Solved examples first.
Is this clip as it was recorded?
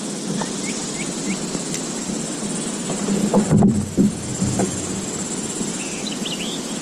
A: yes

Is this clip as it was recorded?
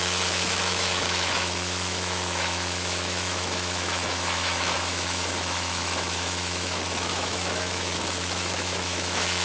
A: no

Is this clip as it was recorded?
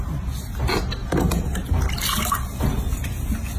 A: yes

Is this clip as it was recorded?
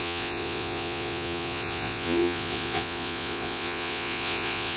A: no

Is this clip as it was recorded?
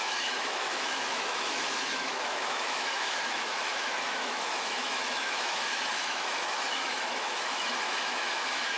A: no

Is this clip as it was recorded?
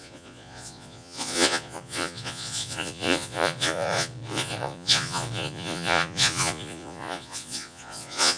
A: no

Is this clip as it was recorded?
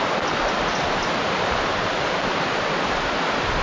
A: yes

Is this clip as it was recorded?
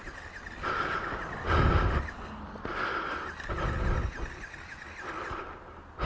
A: yes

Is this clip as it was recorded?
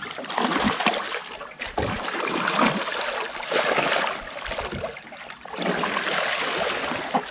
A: yes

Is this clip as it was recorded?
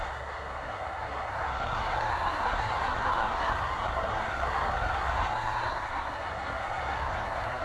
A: no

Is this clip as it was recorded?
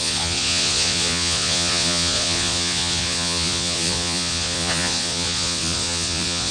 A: no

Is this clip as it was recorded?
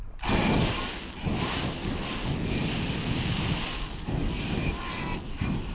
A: yes